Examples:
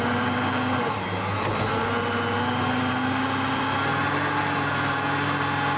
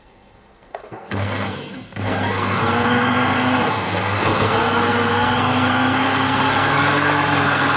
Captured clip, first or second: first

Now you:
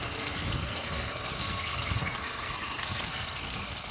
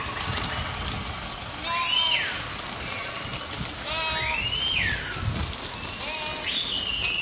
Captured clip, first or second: second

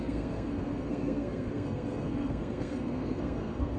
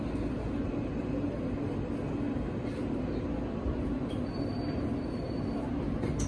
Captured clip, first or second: second